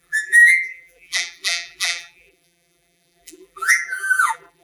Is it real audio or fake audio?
fake